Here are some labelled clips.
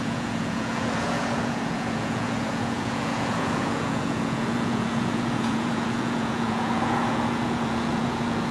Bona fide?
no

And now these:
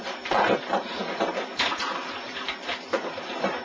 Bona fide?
no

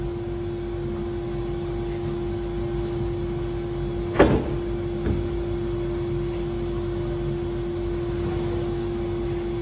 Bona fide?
yes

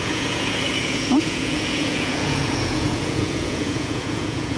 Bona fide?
no